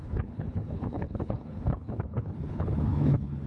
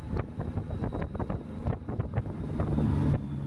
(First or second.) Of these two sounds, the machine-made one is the first